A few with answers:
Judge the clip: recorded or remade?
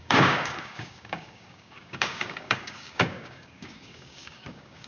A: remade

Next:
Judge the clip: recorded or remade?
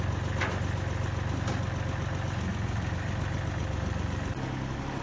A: recorded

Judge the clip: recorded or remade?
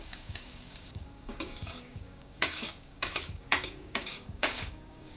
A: remade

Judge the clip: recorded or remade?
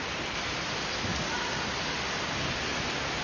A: recorded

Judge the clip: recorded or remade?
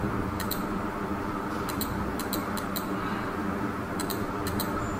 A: remade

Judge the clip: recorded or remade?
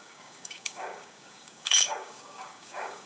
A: remade